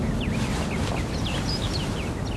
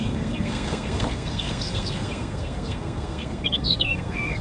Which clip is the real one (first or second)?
first